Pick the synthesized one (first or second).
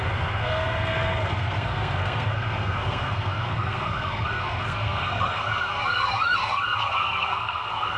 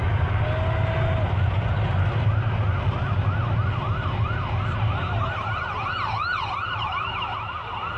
first